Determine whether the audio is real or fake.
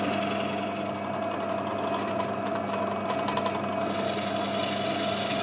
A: real